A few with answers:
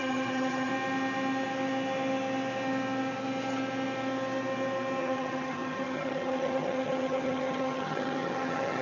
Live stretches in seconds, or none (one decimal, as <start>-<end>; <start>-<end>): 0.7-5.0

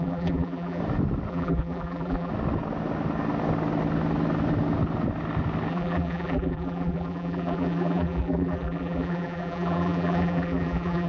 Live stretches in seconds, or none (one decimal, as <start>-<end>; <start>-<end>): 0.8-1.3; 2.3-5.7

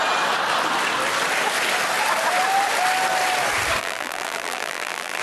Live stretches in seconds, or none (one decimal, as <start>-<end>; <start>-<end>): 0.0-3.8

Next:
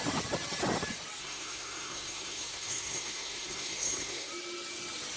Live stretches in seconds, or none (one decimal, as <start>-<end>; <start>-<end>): 0.0-1.2; 4.3-5.2

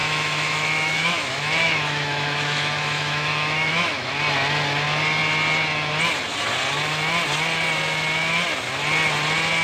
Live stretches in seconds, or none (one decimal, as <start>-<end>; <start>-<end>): 4.1-9.6